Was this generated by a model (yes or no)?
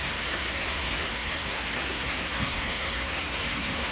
yes